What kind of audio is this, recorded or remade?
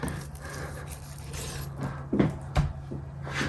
recorded